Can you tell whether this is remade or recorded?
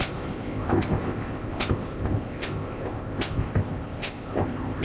remade